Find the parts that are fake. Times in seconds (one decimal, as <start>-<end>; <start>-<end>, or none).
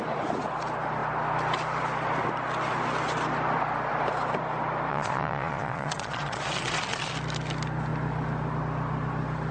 4.9-7.1